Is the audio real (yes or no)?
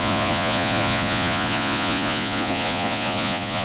no